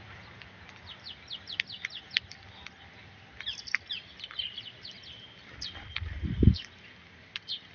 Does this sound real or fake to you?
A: real